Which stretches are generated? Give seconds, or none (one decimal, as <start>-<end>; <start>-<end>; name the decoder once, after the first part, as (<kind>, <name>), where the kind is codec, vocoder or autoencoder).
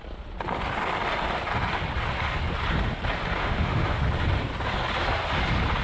3.4-4.0 (autoencoder, DAC-VAE)